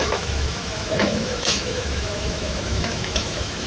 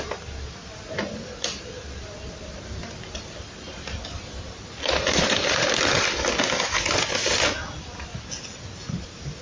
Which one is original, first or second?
second